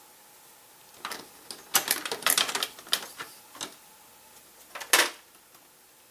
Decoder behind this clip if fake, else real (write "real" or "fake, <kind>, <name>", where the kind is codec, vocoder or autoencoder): real